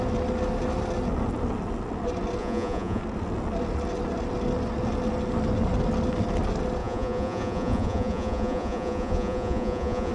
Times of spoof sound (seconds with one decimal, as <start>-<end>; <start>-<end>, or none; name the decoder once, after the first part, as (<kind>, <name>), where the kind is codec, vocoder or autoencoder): 2.4-3.0 (vocoder, Vocos); 6.8-10.1